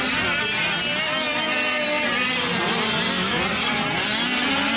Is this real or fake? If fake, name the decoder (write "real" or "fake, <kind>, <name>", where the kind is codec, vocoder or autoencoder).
real